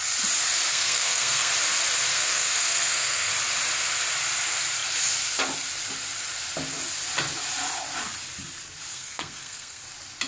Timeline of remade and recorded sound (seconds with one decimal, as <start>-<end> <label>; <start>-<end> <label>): 0.0-0.7 recorded; 0.7-1.5 remade; 1.5-2.1 recorded; 2.1-3.3 remade; 3.3-8.9 recorded; 8.9-9.8 remade; 9.8-10.3 recorded